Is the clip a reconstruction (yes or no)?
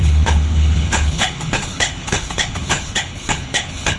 yes